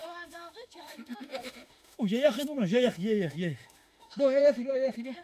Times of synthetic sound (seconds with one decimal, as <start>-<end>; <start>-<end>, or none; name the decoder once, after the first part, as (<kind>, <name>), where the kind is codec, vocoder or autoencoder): 0.0-5.2 (autoencoder, DAC-VAE)